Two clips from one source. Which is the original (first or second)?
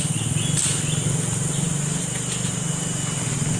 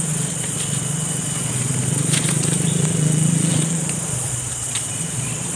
first